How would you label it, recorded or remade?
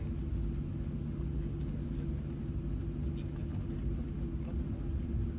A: recorded